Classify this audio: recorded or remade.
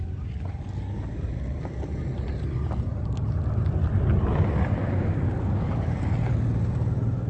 recorded